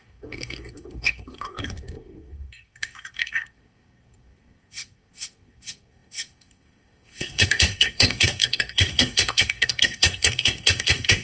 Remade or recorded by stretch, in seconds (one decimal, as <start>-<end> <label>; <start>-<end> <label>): 0.0-11.2 remade